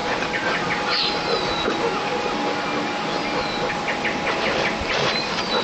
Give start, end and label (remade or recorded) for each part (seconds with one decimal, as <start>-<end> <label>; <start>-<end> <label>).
0.0-5.6 recorded